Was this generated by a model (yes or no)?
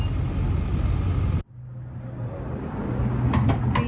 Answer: no